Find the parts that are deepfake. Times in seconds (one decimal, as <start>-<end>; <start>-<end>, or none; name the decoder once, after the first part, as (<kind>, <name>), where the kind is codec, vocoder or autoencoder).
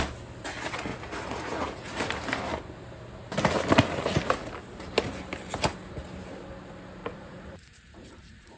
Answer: 0.9-2.0 (vocoder, Vocos); 7.0-8.6